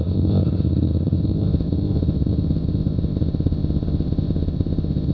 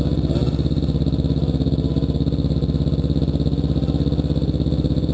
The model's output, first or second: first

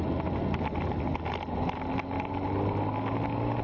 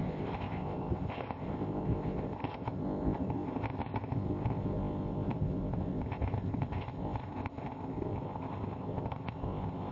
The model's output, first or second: second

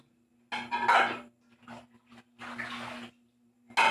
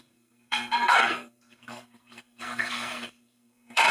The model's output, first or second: second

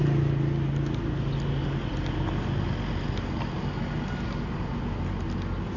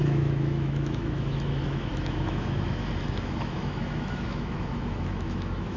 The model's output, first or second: second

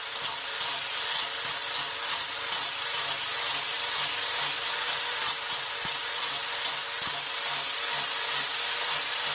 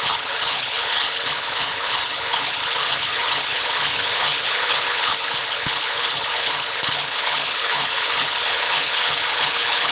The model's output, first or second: second